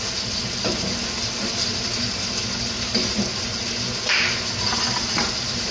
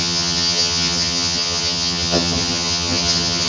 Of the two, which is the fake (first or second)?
second